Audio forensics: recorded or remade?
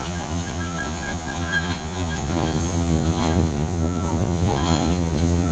remade